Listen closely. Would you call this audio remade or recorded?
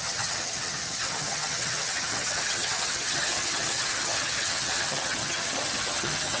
remade